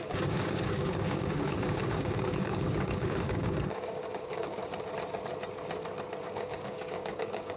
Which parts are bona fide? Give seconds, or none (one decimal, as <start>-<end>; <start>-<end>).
4.6-6.2